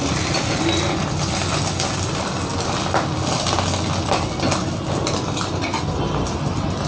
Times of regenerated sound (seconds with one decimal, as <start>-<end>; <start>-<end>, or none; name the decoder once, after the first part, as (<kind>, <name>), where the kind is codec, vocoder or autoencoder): none